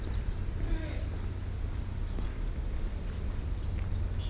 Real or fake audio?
real